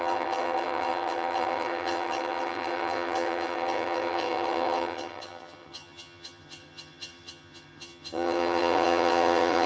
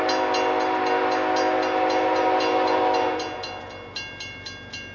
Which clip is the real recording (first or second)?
second